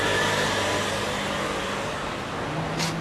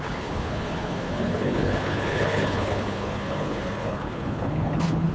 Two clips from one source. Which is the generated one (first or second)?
second